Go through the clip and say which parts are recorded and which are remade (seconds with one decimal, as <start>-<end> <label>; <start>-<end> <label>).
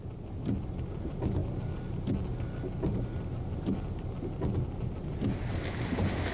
0.0-6.3 recorded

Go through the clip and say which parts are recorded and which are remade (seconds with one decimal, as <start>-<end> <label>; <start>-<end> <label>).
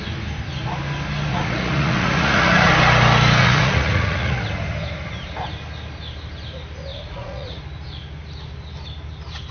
0.0-1.3 recorded; 1.3-2.7 remade; 2.7-3.4 recorded; 3.4-4.4 remade; 4.4-6.9 recorded; 6.9-7.6 remade; 7.6-9.5 recorded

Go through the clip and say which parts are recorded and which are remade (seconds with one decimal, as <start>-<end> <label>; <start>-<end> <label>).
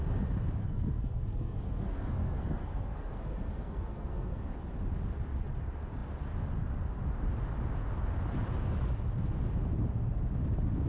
0.0-0.6 recorded; 0.6-4.5 remade; 4.5-10.9 recorded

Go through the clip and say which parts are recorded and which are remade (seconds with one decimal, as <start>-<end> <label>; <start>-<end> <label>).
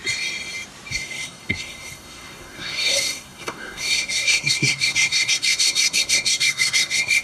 0.0-0.9 recorded; 0.9-7.2 remade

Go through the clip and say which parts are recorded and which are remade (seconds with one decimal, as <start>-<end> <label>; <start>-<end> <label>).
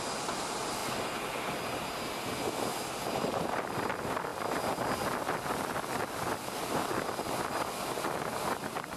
0.0-9.0 recorded